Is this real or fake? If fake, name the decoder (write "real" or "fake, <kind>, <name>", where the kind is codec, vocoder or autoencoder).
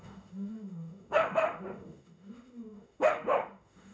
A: fake, autoencoder, DAC-VAE